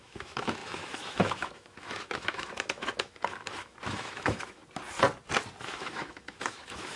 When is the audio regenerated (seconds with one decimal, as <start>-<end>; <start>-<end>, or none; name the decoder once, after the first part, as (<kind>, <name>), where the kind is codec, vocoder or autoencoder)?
0.0-4.6 (autoencoder, DAC-VAE); 5.6-7.0

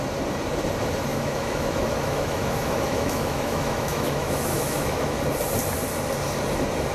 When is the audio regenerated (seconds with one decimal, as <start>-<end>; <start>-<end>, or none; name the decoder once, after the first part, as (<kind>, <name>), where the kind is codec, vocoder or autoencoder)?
1.1-5.2 (autoencoder, DAC-VAE)

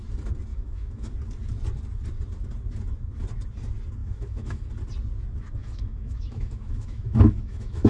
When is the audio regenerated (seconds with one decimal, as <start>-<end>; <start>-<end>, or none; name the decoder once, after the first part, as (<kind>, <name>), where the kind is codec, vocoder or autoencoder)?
0.5-1.1 (autoencoder, DAC-VAE); 4.0-4.7; 5.6-7.9

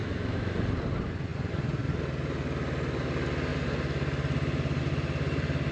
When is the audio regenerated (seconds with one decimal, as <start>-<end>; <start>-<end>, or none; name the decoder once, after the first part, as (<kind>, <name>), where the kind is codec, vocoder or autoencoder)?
0.0-0.6 (autoencoder, DAC-VAE)

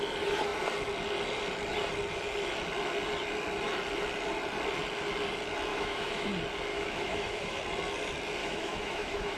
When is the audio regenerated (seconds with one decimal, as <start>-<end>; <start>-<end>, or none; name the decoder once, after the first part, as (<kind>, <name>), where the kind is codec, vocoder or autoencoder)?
5.7-6.3 (autoencoder, DAC-VAE); 6.7-7.6; 8.4-9.4

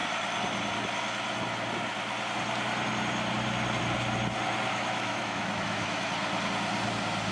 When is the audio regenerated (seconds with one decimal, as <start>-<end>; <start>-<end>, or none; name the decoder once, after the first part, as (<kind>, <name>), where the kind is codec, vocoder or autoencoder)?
4.7-6.0 (autoencoder, DAC-VAE)